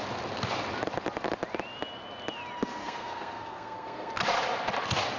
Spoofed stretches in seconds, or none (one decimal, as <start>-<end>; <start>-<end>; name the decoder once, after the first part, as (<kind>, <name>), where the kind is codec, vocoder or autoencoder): 2.8-4.1 (codec, SNAC)